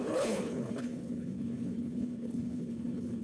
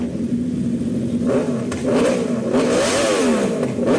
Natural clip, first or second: second